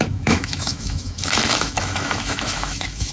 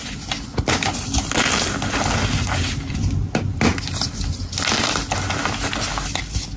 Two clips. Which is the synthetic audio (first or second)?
first